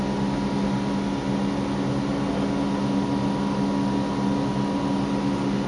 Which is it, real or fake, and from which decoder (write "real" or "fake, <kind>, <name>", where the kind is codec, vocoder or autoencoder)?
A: real